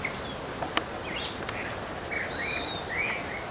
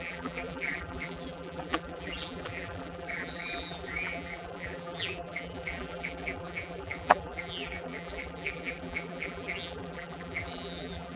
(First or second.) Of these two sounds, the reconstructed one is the second